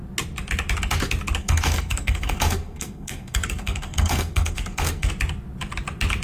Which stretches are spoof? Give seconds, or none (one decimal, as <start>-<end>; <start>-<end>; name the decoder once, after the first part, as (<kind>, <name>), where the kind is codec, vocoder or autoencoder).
1.4-5.1 (codec, SNAC)